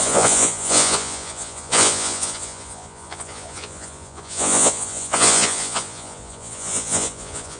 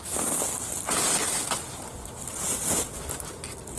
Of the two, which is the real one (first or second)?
second